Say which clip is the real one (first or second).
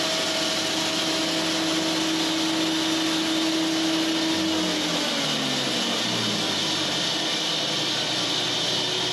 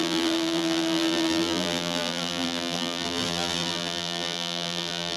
first